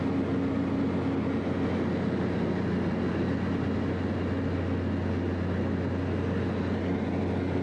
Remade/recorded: recorded